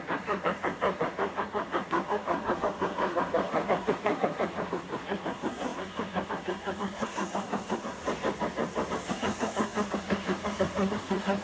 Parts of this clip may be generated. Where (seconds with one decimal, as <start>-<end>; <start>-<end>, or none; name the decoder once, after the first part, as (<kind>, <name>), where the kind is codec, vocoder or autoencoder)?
0.0-8.0 (codec, SNAC); 9.1-11.4